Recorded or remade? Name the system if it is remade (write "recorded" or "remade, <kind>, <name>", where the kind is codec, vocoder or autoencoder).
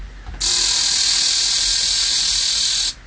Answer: recorded